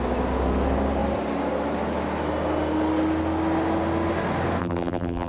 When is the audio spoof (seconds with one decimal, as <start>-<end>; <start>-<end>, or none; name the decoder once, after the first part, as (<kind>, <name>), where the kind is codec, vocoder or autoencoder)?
4.6-5.3 (vocoder, BigVGAN v2)